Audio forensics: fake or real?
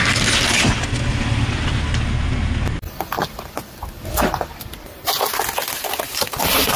real